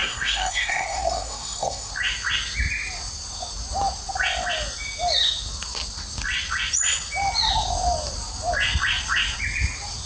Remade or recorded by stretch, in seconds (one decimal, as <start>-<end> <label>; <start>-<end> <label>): 0.0-1.9 remade; 1.9-10.1 recorded